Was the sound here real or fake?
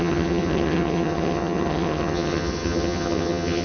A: fake